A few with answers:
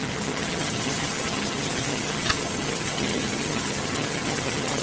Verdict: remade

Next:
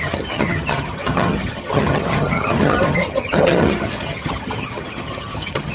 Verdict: remade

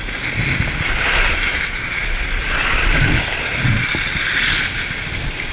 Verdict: recorded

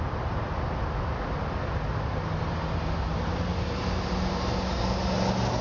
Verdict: recorded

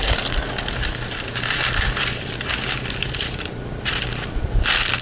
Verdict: recorded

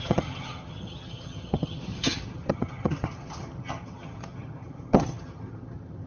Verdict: remade